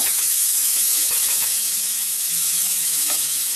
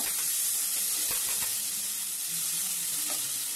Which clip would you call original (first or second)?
second